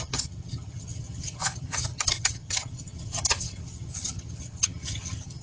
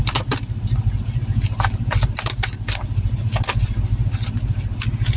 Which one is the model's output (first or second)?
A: first